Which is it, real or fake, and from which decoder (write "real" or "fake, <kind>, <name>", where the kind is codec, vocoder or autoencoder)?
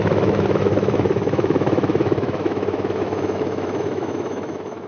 fake, autoencoder, DAC-VAE